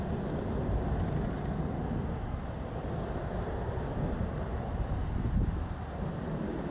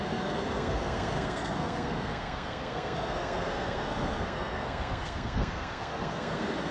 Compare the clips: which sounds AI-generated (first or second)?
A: second